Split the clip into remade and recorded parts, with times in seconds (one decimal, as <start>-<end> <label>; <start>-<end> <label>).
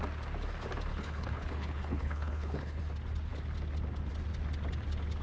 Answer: 0.0-0.9 recorded; 0.9-2.8 remade; 2.8-5.2 recorded